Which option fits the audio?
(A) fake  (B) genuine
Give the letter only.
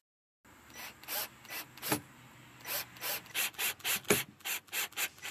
B